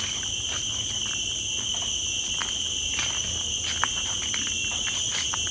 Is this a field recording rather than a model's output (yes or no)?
yes